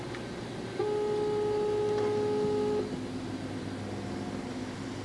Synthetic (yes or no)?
no